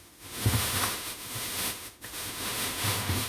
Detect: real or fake fake